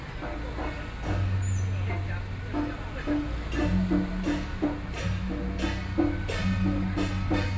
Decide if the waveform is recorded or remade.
recorded